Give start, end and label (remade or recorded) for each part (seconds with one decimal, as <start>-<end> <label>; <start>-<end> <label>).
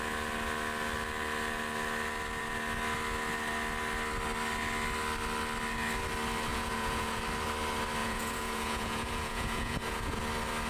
0.0-6.5 recorded; 6.5-7.2 remade; 7.2-8.0 recorded; 8.0-10.2 remade; 10.2-10.7 recorded